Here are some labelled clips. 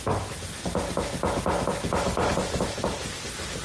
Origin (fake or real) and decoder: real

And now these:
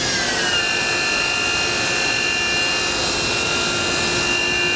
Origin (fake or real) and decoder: real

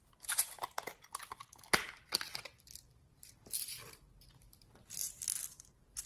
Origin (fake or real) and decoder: real